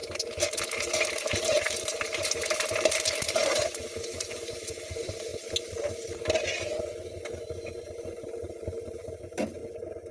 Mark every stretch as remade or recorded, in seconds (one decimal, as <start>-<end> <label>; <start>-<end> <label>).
0.0-5.3 remade; 5.3-8.0 recorded; 8.0-9.6 remade; 9.6-10.1 recorded